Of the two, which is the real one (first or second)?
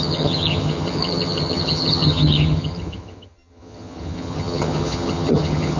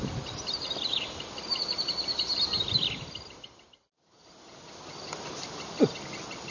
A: second